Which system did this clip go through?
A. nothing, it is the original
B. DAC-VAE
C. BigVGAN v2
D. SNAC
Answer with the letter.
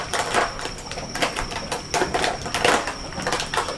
C